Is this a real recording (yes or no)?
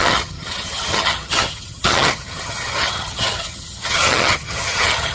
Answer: no